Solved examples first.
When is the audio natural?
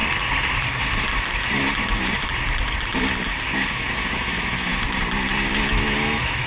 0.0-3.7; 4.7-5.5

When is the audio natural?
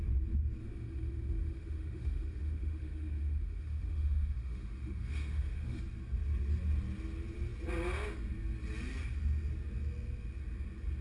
0.0-0.6; 5.8-11.0